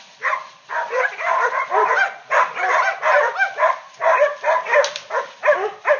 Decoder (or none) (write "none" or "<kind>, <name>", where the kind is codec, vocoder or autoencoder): none